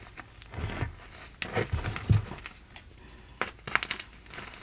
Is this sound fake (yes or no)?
no